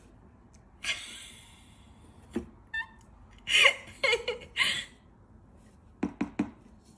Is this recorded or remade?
recorded